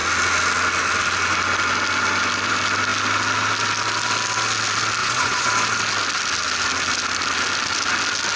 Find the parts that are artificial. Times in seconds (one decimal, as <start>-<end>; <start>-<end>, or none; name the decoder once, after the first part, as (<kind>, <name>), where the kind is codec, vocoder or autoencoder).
5.0-5.5 (vocoder, Vocos)